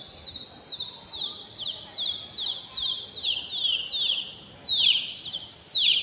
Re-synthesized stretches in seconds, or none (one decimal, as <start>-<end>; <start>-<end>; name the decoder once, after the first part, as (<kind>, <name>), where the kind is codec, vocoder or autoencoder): none